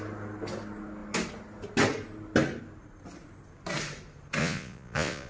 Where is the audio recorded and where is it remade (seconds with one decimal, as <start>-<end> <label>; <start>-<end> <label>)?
0.0-4.4 recorded; 4.4-5.3 remade